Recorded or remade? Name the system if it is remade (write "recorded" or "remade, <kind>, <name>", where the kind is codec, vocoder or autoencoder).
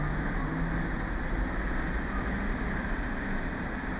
recorded